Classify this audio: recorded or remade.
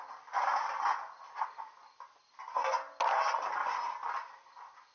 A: recorded